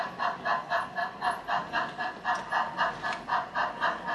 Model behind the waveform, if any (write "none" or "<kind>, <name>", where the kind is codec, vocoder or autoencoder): none